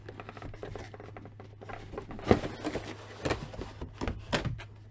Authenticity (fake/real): real